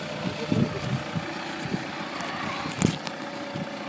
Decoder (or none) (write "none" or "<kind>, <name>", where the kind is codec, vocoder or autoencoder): none